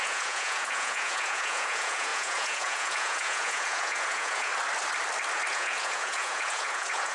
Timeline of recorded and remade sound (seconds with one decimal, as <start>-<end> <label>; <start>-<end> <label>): 0.0-4.5 remade; 4.5-5.5 recorded; 5.5-7.1 remade